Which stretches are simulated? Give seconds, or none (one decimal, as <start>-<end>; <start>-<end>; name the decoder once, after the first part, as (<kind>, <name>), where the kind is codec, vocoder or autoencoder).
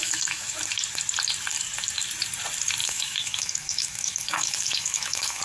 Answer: 0.0-0.6 (autoencoder, DAC-VAE); 2.8-5.4